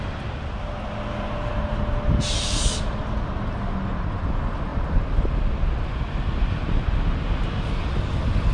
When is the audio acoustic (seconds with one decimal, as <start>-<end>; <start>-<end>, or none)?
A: 0.0-8.5